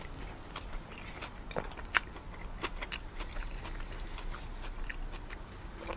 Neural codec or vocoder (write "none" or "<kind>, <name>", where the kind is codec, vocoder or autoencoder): none